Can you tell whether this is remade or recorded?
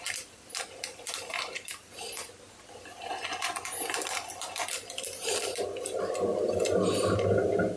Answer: recorded